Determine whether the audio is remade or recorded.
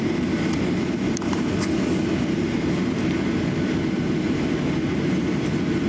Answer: recorded